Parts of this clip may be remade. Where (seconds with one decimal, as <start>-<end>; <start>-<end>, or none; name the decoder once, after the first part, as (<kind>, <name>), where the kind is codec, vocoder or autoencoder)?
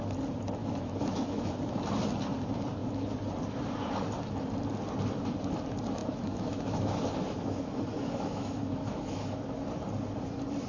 0.6-1.5 (autoencoder, DAC-VAE); 6.0-9.7